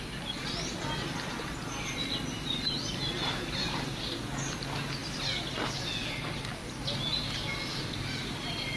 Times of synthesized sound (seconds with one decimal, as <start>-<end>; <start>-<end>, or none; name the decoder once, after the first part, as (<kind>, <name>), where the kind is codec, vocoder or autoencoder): 3.2-3.9 (vocoder, BigVGAN v2)